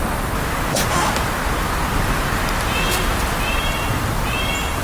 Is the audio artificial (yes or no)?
no